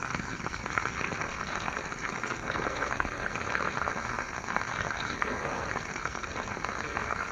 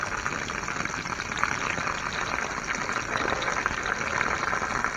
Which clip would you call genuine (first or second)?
second